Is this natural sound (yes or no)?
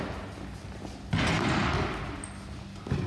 yes